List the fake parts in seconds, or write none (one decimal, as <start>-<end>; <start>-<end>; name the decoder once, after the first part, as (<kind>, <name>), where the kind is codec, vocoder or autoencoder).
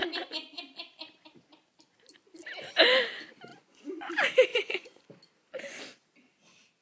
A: 3.5-4.1 (vocoder, Vocos); 4.5-5.1